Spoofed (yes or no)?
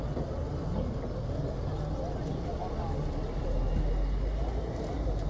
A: no